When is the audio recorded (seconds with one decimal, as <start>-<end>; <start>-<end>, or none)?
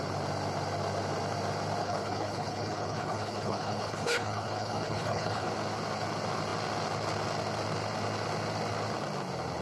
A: 0.0-1.8; 5.5-9.6